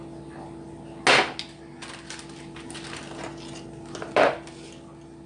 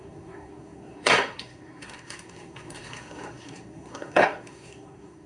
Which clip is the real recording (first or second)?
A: first